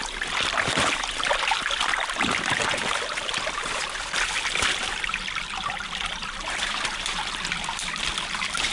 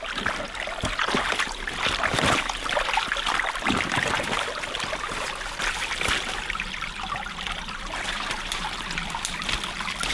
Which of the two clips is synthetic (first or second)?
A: first